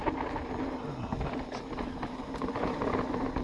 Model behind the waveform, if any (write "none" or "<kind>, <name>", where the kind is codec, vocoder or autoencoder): none